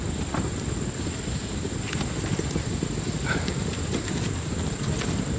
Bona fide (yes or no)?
yes